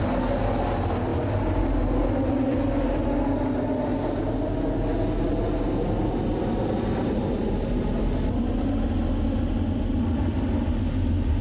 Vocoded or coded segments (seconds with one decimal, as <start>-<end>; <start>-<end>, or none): none